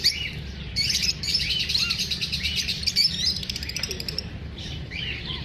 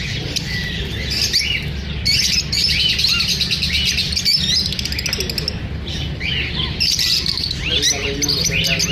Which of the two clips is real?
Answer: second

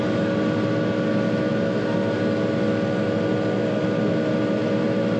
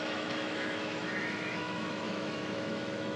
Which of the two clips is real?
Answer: first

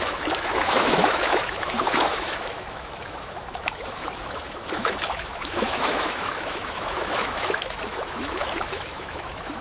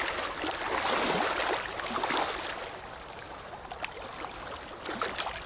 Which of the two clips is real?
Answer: second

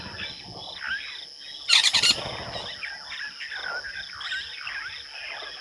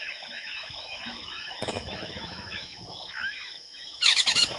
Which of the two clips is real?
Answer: first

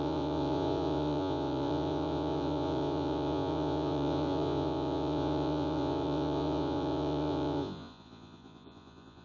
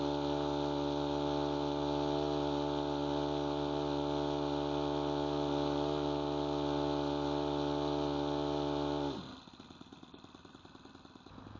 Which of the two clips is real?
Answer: second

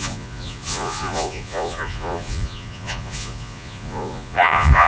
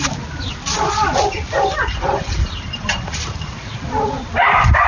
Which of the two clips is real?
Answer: second